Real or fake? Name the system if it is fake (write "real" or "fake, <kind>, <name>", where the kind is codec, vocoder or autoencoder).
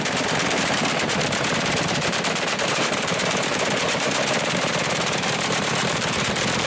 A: fake, vocoder, BigVGAN v2